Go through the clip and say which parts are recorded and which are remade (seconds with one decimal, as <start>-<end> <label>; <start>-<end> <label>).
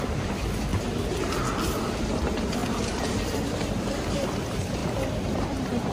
0.0-0.7 remade; 0.7-1.9 recorded; 1.9-5.9 remade